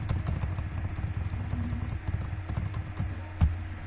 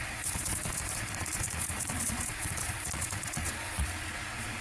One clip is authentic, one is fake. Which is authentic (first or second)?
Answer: first